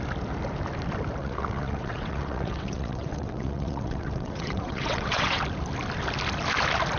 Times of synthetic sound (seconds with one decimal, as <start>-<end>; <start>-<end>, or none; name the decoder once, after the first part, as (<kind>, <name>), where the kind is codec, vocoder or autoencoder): 1.2-5.4 (vocoder, WaveNeXt)